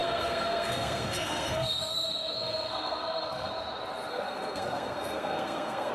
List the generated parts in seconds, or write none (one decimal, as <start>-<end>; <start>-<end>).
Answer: 0.0-3.5; 4.1-5.9